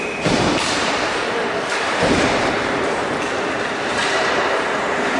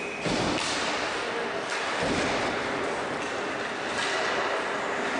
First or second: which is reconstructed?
first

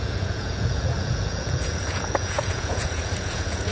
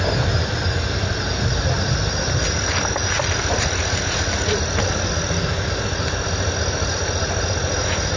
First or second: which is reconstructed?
first